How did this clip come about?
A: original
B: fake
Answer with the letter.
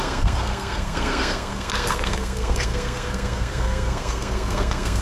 B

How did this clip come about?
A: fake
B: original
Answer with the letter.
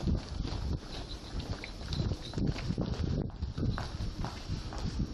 B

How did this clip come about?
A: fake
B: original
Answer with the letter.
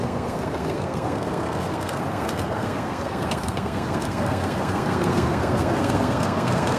A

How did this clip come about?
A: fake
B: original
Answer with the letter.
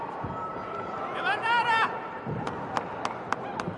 B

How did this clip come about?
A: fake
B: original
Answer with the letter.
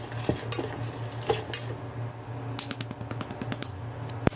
B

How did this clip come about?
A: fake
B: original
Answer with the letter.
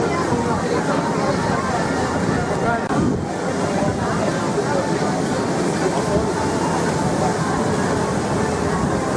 B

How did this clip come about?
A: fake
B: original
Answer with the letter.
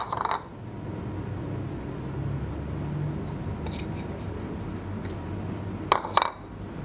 B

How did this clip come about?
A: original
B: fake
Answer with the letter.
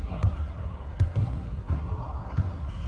B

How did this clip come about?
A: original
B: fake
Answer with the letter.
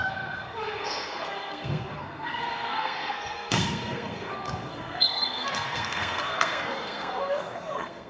B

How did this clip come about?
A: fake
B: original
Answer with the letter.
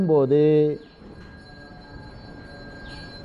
B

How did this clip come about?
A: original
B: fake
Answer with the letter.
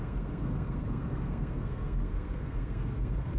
B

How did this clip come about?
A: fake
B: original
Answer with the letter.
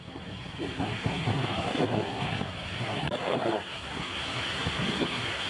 A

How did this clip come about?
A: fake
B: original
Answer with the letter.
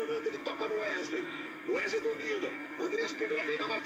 A